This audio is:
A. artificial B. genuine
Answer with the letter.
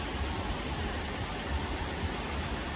B